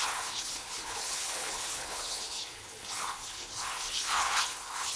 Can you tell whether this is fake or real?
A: fake